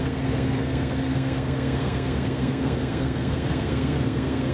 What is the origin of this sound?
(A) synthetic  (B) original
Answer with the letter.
A